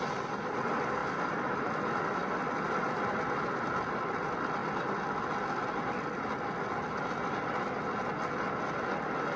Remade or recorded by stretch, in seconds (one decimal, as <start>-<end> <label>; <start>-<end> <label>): 0.0-1.0 recorded; 1.0-1.6 remade; 1.6-9.4 recorded